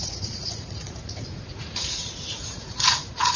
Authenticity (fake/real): fake